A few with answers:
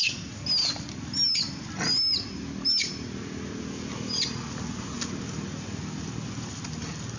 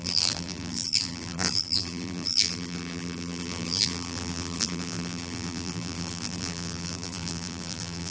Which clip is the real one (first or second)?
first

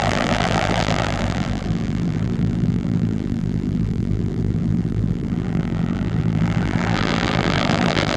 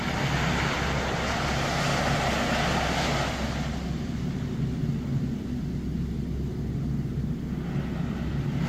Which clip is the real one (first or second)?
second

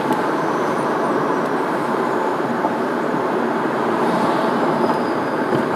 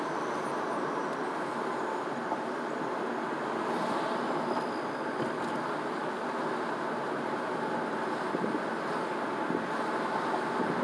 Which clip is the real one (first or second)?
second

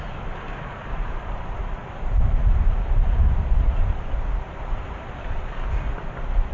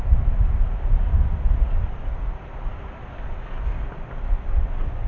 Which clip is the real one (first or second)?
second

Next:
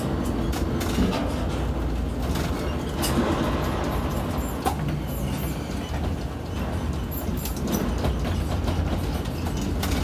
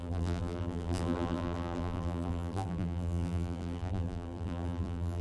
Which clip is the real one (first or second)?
first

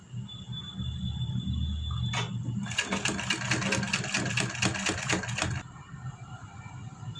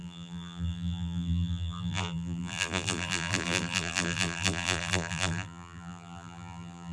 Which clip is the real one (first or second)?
first